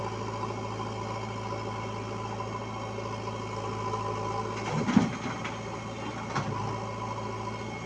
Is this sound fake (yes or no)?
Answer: no